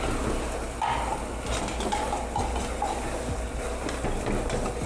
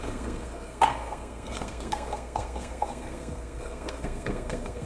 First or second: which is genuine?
first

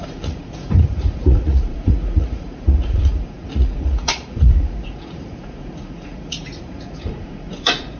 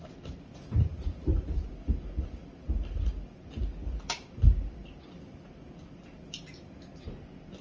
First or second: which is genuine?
second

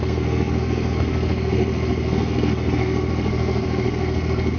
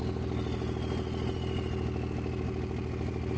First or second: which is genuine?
second